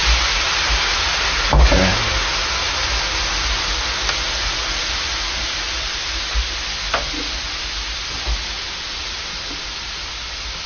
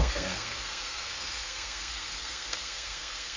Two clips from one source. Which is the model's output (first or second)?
second